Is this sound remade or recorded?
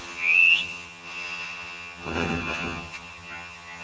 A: remade